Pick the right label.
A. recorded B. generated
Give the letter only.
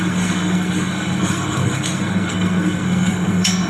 B